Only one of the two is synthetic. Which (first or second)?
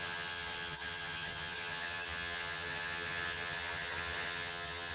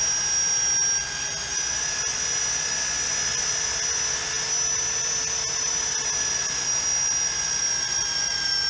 first